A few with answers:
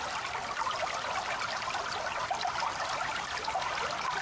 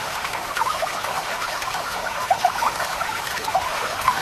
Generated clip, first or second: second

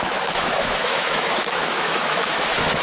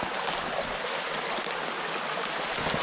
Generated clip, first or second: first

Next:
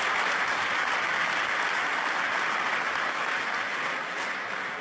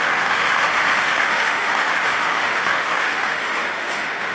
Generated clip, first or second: second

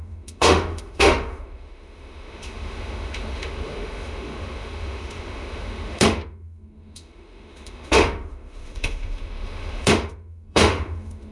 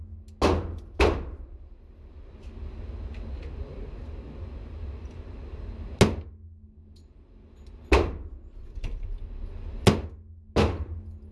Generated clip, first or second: first